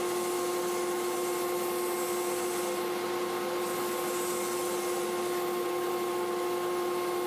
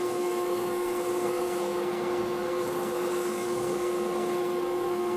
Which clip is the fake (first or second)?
second